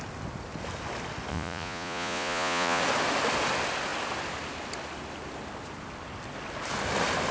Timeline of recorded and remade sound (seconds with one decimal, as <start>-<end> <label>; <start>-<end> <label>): 0.0-1.3 recorded; 1.3-2.8 remade; 2.8-7.3 recorded